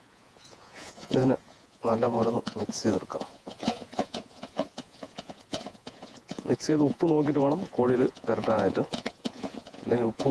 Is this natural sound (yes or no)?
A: no